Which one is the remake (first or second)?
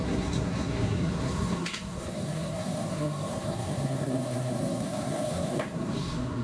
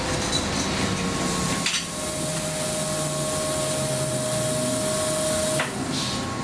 first